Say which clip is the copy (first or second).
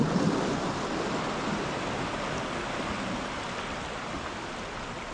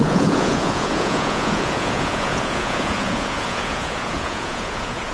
second